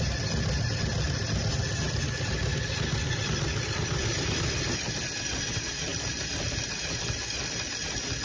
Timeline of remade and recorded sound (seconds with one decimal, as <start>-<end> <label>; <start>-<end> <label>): 0.0-8.2 recorded